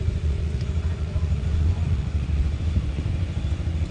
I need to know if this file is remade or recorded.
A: remade